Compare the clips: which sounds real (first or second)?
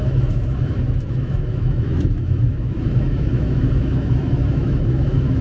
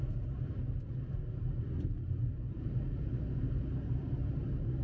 second